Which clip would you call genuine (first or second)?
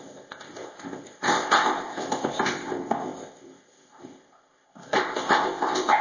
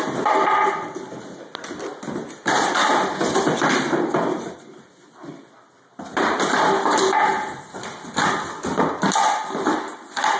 second